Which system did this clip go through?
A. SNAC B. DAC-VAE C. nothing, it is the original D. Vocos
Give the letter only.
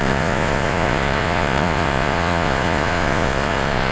D